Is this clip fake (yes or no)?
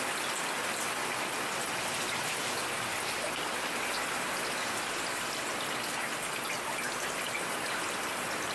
no